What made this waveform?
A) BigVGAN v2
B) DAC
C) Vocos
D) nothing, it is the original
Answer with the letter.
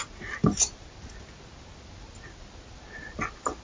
D